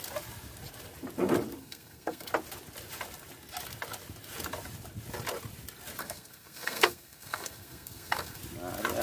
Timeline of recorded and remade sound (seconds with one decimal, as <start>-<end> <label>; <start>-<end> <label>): 0.0-1.6 recorded; 1.6-2.3 remade; 2.3-6.0 recorded; 6.0-8.4 remade; 8.4-9.0 recorded

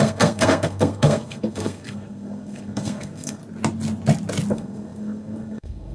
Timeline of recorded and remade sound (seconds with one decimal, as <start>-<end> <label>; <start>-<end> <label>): 0.0-3.4 remade; 3.4-4.5 recorded; 4.5-5.9 remade

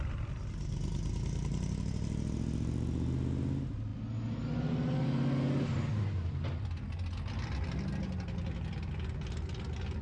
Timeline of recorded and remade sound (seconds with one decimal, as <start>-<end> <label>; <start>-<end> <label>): 0.0-10.0 recorded